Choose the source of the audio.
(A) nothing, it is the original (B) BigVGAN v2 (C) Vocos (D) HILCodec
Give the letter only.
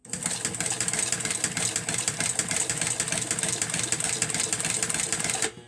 A